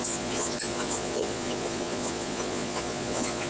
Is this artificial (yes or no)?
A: yes